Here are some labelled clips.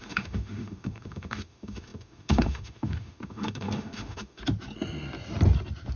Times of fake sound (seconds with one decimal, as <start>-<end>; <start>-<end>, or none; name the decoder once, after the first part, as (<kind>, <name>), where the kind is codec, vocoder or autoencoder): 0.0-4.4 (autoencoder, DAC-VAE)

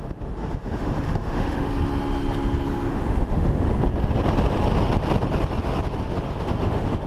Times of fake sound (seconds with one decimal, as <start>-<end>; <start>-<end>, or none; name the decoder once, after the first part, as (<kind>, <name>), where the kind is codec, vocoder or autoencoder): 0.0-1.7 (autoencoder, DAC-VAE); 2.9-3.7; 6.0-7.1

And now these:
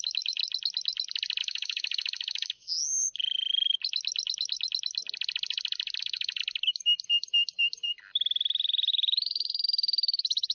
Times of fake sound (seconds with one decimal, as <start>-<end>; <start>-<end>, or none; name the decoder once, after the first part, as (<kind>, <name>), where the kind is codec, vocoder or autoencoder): 0.0-0.4 (autoencoder, DAC-VAE); 1.4-2.8; 6.0-6.4; 8.9-10.5